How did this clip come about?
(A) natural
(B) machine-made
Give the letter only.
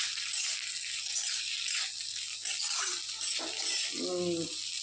A